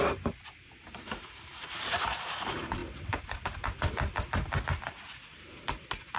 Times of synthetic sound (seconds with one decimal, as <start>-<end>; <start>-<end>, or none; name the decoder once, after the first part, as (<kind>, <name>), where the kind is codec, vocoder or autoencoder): 0.0-2.8 (vocoder, BigVGAN v2); 5.8-6.2

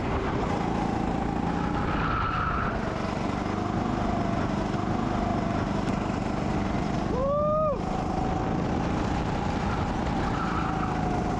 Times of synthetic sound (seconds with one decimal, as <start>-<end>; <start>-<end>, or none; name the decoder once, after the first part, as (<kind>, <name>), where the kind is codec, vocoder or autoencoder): 5.3-5.8 (vocoder, BigVGAN v2)

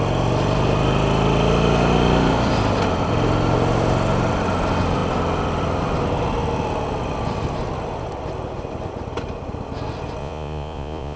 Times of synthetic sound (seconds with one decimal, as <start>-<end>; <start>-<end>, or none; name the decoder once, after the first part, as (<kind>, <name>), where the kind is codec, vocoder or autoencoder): 10.2-11.2 (vocoder, Vocos)

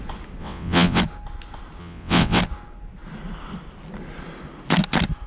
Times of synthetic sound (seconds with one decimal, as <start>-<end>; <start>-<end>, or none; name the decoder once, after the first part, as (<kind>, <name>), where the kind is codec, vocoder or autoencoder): 0.4-1.0 (vocoder, WaveNeXt); 1.8-2.4

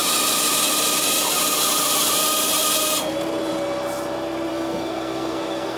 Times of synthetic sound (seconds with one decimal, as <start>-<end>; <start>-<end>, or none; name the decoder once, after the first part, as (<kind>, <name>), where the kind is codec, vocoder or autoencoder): 4.5-5.8 (codec, SNAC)

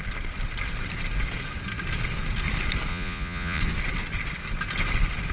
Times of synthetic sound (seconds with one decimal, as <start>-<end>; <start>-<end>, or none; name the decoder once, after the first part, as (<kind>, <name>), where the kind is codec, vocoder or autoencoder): 2.9-3.6 (vocoder, Vocos)